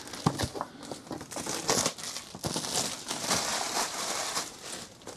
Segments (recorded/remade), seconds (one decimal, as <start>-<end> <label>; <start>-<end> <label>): 0.0-3.5 recorded; 3.5-4.6 remade; 4.6-5.2 recorded